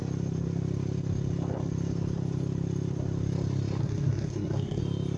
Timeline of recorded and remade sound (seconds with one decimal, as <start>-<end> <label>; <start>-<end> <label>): 0.0-3.8 recorded; 3.8-4.8 remade; 4.8-5.2 recorded